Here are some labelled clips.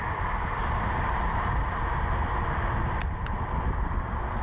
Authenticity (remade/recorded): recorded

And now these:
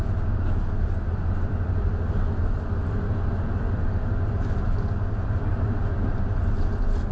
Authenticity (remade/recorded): recorded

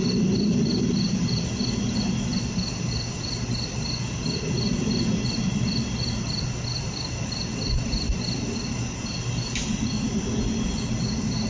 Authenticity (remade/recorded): recorded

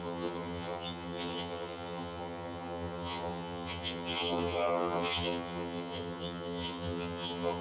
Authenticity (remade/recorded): remade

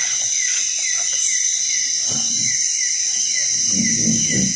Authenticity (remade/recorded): recorded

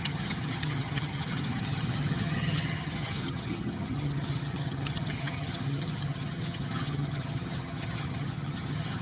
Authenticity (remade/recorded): remade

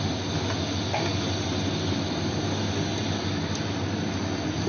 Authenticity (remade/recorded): recorded